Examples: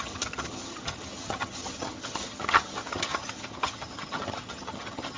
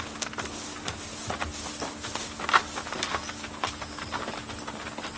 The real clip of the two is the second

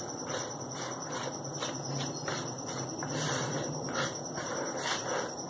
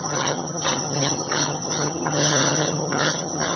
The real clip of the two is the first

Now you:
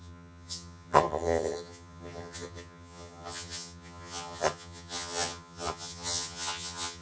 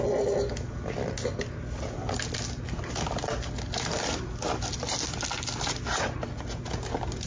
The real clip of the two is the second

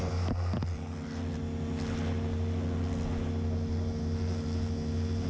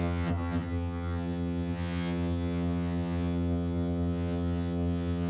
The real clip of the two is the first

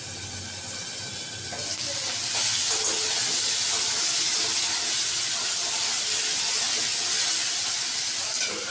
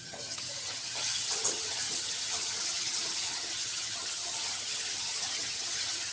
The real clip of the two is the first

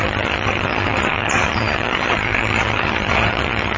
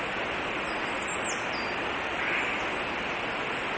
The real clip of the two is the second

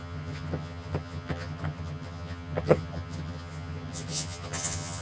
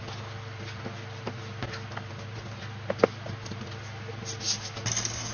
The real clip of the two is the second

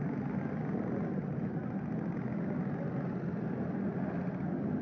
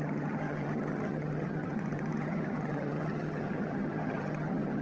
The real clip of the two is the first